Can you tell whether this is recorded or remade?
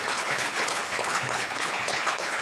remade